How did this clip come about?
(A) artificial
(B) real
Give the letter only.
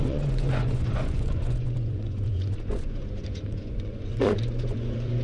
A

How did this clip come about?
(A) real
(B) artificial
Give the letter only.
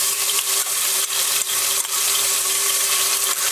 B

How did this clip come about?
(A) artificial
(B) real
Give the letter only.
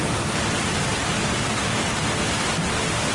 B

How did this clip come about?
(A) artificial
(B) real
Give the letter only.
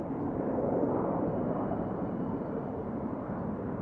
A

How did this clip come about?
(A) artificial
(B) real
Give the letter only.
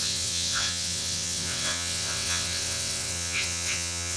A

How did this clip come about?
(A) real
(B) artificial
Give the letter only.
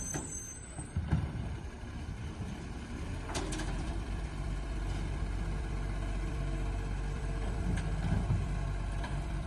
B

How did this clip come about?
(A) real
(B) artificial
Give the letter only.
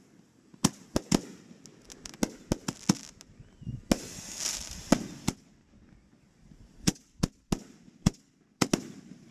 A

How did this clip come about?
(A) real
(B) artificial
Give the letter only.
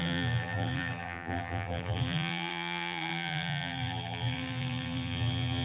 B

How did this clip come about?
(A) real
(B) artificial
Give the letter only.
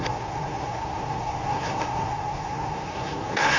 B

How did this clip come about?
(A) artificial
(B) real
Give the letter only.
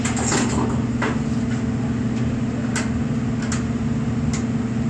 B